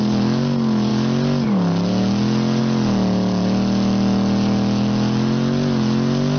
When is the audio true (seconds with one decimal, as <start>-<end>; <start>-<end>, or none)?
0.0-6.4